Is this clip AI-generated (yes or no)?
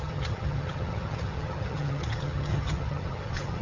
yes